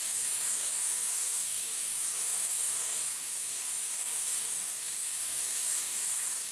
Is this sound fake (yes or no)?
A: yes